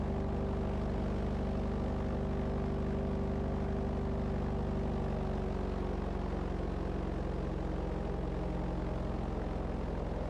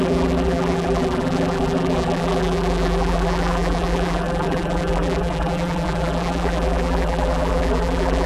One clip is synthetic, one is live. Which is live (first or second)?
first